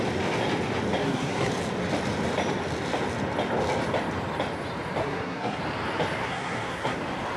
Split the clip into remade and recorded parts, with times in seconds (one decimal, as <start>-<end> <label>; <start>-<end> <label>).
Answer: 0.0-1.0 recorded; 1.0-1.5 remade; 1.5-5.0 recorded; 5.0-5.6 remade; 5.6-6.2 recorded; 6.2-7.0 remade; 7.0-7.4 recorded